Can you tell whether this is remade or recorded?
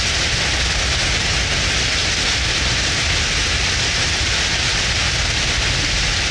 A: recorded